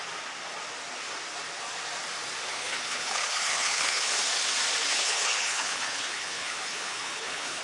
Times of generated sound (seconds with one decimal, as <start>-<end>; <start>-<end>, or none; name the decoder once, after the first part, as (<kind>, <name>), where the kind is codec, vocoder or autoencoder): 2.5-4.1 (codec, HILCodec); 4.9-7.6